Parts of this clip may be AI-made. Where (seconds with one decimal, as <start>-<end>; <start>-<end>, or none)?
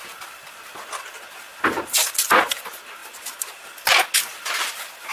none